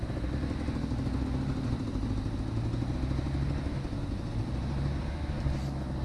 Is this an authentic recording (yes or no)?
yes